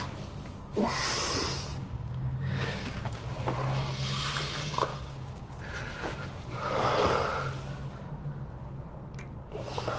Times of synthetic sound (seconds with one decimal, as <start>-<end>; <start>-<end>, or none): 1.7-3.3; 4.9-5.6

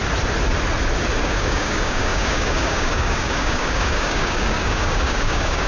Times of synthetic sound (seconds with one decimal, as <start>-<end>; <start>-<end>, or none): 1.2-5.7

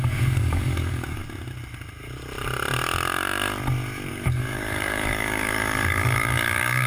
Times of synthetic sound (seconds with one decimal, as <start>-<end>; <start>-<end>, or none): 0.0-1.2; 4.1-6.9

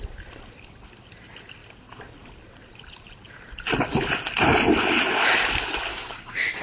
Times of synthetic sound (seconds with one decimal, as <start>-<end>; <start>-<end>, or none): 5.9-6.6

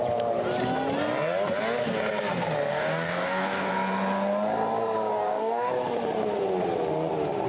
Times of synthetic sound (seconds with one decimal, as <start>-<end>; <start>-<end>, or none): 2.7-3.7; 5.1-5.7

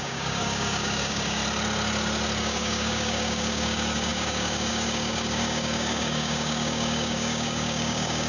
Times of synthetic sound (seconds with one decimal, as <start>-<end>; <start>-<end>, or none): 0.0-1.4; 2.4-8.3

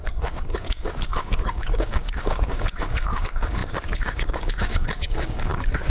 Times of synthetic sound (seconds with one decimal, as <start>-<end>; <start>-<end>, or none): 0.0-5.9

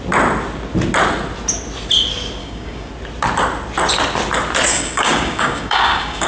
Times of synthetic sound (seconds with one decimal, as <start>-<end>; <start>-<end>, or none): 2.4-2.9; 4.7-6.3